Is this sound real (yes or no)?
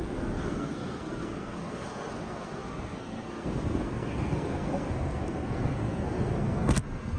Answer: no